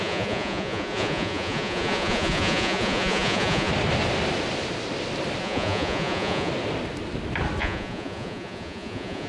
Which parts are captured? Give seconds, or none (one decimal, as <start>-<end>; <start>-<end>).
3.7-5.4; 6.5-7.6